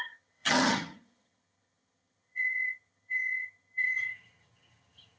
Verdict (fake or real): fake